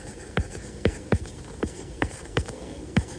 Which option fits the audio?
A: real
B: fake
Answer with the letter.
B